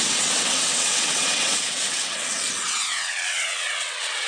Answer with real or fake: fake